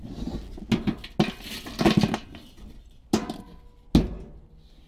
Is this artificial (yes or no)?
no